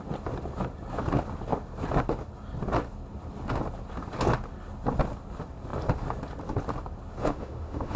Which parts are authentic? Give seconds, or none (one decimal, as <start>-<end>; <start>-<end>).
0.0-7.2